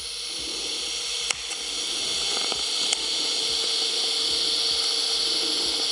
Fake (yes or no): no